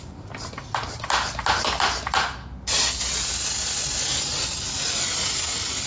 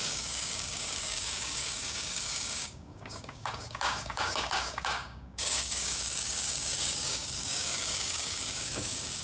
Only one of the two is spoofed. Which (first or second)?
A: second